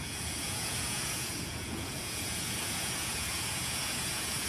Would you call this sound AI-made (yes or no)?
yes